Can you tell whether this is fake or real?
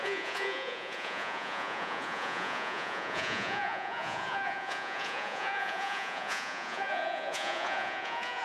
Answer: fake